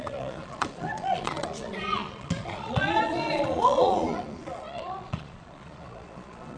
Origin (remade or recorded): remade